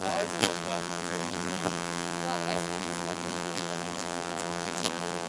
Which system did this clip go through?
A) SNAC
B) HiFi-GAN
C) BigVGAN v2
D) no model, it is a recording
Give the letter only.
C